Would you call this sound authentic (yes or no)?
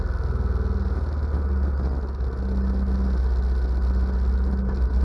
yes